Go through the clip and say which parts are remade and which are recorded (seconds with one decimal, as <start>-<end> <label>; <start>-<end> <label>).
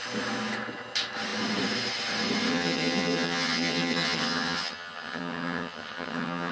0.0-2.5 recorded; 2.5-6.5 remade